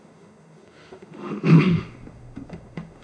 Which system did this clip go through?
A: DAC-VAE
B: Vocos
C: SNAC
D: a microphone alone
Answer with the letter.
A